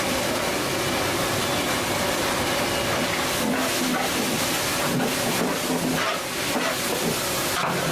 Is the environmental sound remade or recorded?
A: recorded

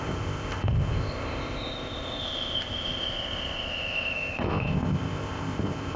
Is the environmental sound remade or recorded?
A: remade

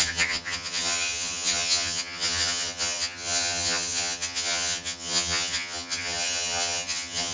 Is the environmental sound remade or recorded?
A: remade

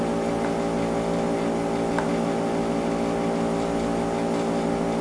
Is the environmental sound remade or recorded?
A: recorded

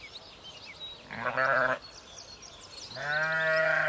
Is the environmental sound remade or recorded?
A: recorded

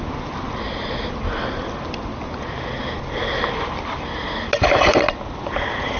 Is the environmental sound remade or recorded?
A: recorded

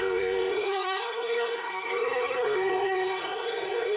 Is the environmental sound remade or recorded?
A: remade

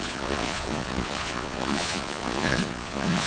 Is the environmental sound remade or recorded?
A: remade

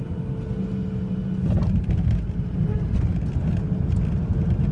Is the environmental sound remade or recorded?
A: recorded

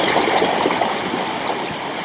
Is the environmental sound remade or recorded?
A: recorded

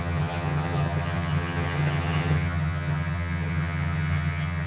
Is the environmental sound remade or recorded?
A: remade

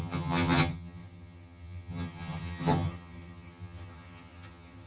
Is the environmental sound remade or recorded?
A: remade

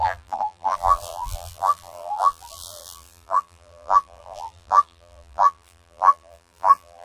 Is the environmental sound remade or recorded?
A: remade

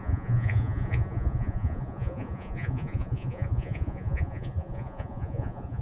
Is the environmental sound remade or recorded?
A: remade